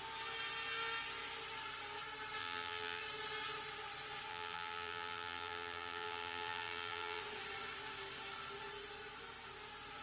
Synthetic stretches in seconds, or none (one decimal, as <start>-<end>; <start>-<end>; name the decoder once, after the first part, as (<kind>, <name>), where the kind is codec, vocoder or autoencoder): 2.4-3.0 (vocoder, BigVGAN v2); 4.3-7.2